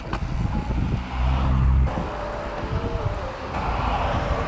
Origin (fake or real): real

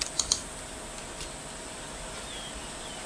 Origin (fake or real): real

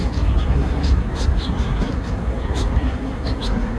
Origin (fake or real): fake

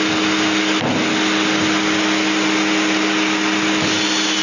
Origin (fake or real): real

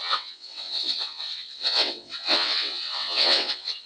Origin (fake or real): fake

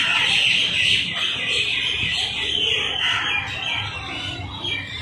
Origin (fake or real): real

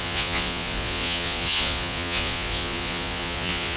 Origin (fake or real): fake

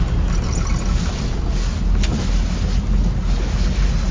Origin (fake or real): real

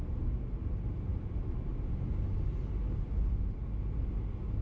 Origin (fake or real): real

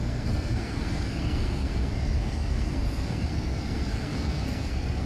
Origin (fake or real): fake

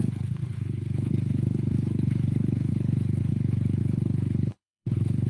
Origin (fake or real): fake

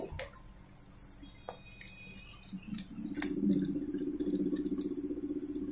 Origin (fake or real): real